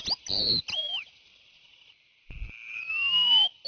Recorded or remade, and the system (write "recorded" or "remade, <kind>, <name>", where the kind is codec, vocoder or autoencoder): recorded